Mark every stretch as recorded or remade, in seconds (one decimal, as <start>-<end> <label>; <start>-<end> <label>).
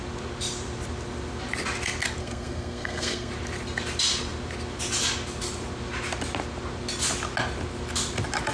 0.0-2.2 recorded; 2.2-3.3 remade; 3.3-8.5 recorded